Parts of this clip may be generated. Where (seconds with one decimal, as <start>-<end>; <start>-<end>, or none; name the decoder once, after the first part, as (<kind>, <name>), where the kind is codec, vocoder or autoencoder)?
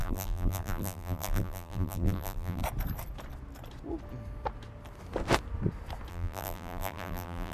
0.0-2.6 (vocoder, BigVGAN v2); 6.1-7.5